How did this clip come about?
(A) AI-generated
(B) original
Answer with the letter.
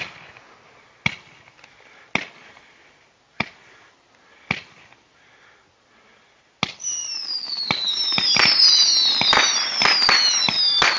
B